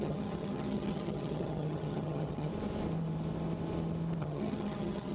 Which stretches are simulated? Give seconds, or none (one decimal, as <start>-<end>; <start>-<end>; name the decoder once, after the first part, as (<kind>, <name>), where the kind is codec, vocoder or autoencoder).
0.0-2.5 (vocoder, HiFi-GAN); 4.2-5.1